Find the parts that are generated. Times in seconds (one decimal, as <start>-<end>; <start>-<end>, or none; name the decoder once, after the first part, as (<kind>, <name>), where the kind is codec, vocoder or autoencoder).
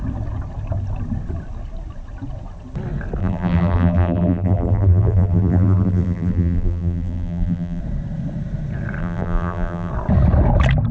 3.2-7.8 (vocoder, BigVGAN v2); 9.0-9.9